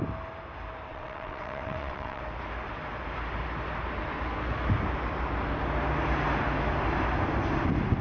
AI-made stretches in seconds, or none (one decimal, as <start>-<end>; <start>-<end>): 0.9-2.2